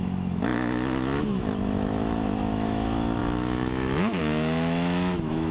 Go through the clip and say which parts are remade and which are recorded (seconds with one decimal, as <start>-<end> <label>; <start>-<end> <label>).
0.0-5.5 remade